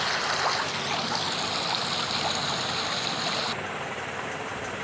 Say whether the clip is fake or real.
real